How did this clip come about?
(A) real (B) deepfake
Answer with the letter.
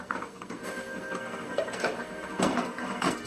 B